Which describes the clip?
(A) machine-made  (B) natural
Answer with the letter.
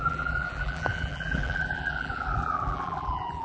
A